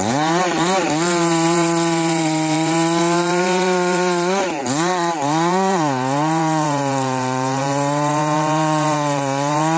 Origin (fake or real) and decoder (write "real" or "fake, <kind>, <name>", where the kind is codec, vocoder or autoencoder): fake, vocoder, BigVGAN v2